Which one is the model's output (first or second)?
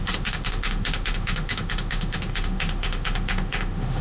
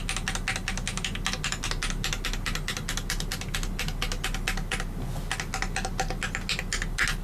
first